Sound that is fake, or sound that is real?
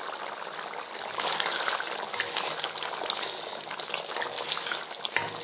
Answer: real